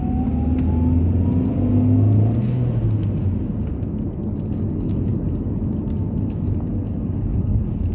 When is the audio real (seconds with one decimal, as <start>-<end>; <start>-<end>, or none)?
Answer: 0.0-7.9